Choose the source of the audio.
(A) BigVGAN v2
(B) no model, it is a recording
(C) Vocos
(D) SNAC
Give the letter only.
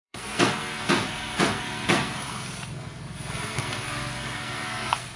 D